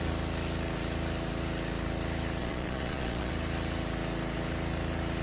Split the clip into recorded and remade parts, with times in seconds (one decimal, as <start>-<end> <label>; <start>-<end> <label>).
0.0-2.4 recorded; 2.4-3.3 remade; 3.3-5.2 recorded